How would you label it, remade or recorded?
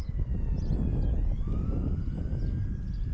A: recorded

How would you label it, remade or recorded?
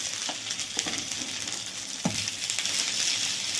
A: recorded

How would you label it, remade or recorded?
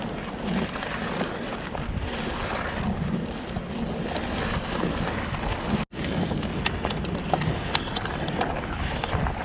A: recorded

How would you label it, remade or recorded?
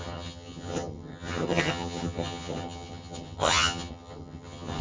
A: remade